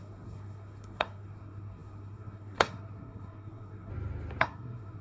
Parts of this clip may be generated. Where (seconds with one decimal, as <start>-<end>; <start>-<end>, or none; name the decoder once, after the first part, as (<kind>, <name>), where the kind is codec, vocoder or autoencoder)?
0.0-3.9 (codec, SNAC); 4.4-5.0